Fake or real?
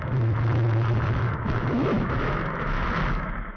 fake